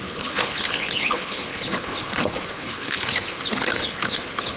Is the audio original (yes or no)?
no